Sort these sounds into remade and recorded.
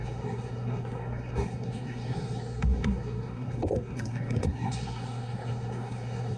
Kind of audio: remade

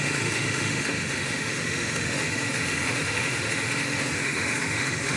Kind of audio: remade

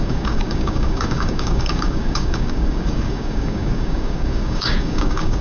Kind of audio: remade